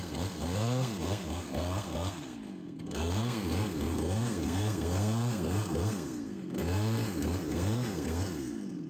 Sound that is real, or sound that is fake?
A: fake